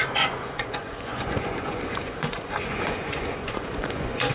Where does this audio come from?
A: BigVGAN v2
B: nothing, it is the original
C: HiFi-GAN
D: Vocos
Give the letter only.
D